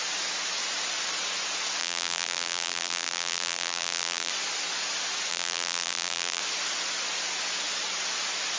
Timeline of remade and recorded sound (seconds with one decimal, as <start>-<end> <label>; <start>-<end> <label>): 0.0-1.8 recorded; 1.8-4.3 remade; 4.3-5.3 recorded; 5.3-6.4 remade; 6.4-8.6 recorded